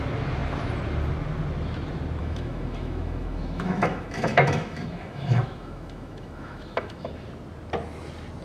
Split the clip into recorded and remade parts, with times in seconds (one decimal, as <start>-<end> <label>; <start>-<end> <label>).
0.0-2.2 recorded; 2.2-7.1 remade; 7.1-8.4 recorded

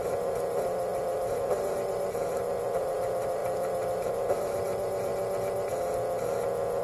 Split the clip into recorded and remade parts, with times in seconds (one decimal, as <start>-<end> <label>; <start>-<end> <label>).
0.0-5.1 remade; 5.1-6.8 recorded